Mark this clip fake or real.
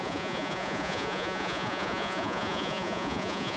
fake